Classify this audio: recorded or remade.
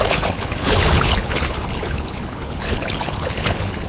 remade